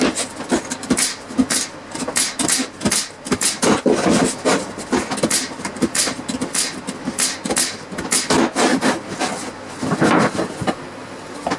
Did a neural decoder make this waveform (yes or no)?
no